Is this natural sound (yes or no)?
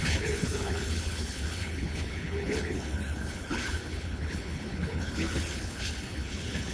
no